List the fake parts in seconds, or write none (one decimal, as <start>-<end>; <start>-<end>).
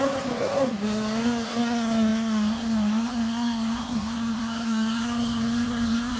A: 0.0-6.2